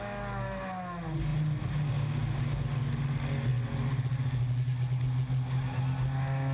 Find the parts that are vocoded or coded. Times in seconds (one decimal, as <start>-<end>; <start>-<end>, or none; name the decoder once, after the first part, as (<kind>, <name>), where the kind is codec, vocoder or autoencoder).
none